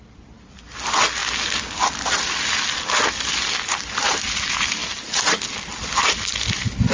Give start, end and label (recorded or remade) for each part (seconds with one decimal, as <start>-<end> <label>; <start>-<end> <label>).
0.0-6.9 recorded